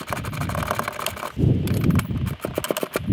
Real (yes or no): yes